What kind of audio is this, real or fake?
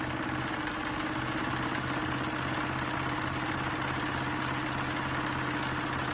real